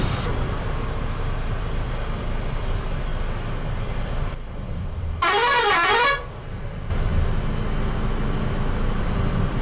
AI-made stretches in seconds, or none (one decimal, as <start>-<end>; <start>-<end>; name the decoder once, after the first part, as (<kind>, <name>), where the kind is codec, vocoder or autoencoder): 0.0-3.1 (vocoder, BigVGAN v2); 3.8-7.1; 9.0-9.6